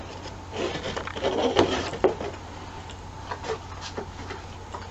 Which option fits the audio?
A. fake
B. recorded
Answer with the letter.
B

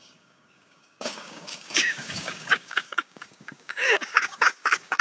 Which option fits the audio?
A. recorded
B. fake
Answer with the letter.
B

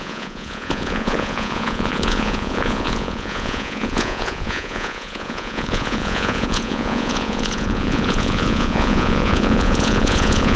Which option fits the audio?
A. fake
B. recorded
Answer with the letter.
A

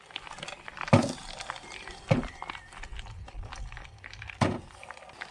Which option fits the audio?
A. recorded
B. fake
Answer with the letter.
A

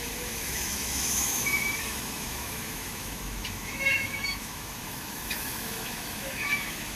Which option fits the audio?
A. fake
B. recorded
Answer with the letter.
A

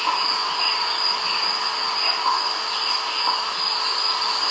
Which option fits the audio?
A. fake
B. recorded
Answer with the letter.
B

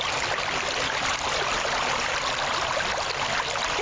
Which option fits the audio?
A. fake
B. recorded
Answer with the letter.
B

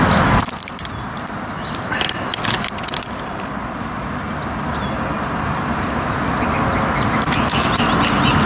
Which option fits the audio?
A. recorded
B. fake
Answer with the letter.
A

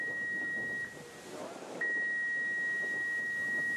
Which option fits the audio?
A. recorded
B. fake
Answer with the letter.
A